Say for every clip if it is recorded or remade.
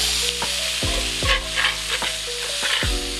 recorded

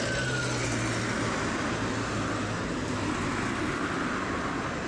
recorded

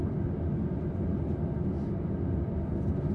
recorded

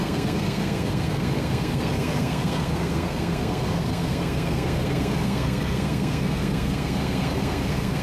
remade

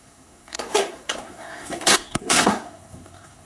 remade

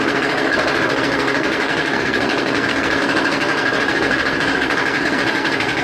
remade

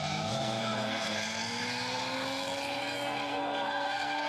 remade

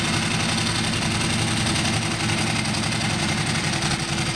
recorded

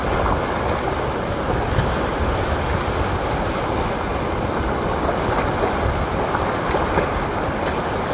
recorded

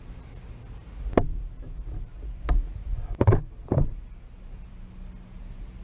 recorded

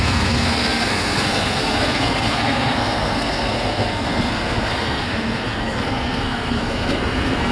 remade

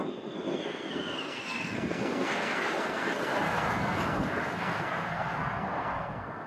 remade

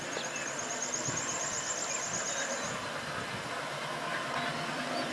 recorded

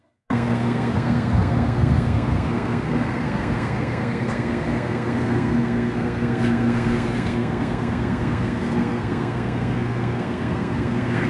remade